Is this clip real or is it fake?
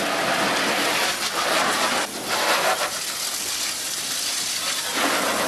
real